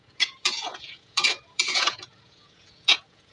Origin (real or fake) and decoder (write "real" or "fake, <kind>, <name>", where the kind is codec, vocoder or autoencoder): fake, vocoder, Vocos